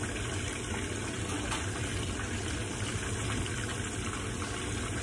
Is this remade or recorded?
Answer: recorded